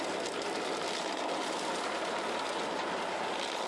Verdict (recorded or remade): recorded